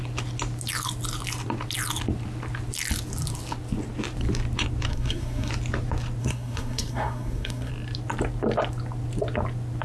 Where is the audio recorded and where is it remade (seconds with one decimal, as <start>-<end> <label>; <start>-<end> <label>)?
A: 0.0-4.9 recorded; 4.9-5.5 remade; 5.5-6.2 recorded; 6.2-7.7 remade; 7.7-9.8 recorded